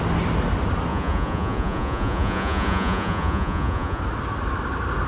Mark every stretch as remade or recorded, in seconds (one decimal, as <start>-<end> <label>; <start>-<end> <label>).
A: 0.0-0.9 recorded; 0.9-4.0 remade; 4.0-5.1 recorded